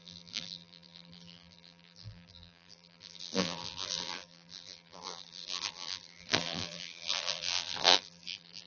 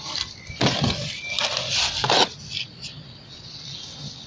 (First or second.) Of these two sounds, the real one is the second